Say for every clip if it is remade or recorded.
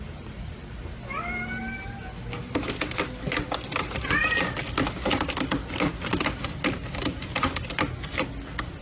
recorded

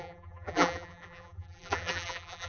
remade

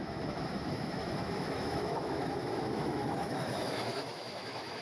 remade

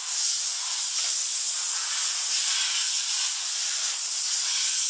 recorded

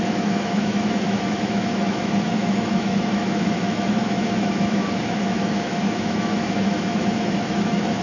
remade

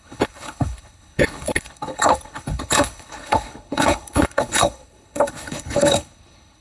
remade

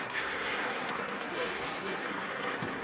remade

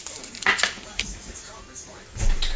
recorded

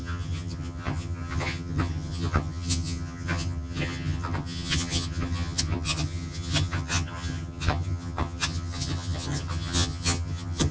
remade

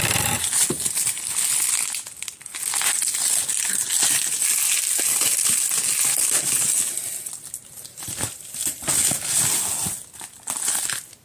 recorded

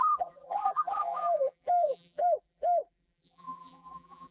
remade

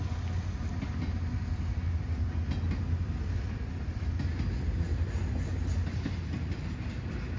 recorded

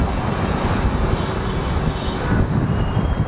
recorded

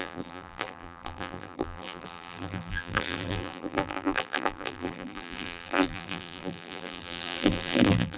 remade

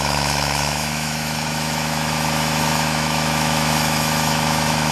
remade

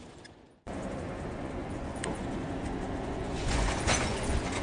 remade